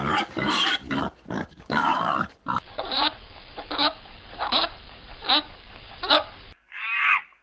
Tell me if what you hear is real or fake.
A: fake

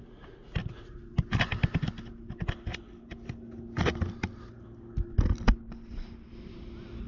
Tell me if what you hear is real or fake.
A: real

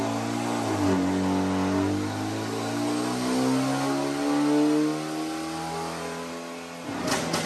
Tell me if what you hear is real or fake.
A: real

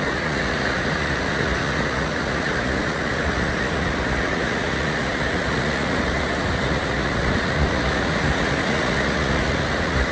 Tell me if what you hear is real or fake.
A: fake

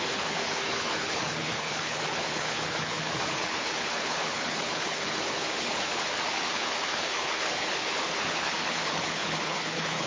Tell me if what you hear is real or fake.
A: fake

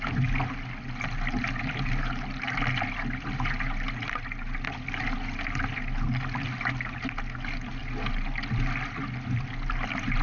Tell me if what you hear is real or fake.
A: real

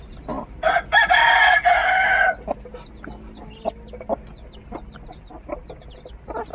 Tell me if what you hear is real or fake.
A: real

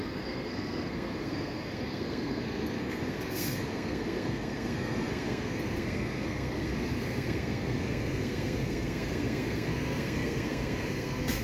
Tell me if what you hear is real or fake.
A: fake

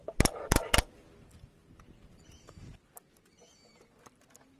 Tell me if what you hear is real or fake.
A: real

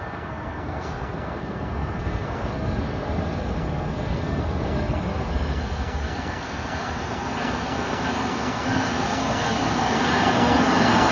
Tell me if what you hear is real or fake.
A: fake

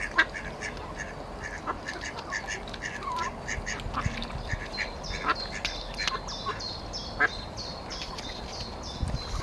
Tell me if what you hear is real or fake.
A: real